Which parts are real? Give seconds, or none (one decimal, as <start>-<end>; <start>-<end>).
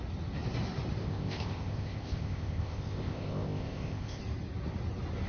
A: 0.0-1.0; 4.2-5.3